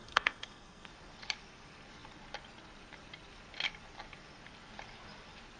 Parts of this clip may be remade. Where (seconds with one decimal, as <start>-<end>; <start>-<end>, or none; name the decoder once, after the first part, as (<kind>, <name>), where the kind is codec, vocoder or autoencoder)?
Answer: 0.0-0.9 (codec, SNAC)